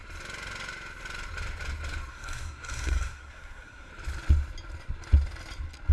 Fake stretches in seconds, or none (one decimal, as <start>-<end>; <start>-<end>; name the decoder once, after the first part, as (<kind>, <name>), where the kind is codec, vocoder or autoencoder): 2.1-3.9 (codec, SNAC)